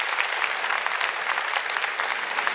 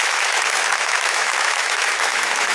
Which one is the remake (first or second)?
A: second